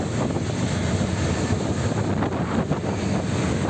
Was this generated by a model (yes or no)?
no